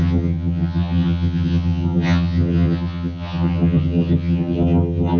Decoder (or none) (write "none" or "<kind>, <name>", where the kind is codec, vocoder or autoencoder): vocoder, HiFi-GAN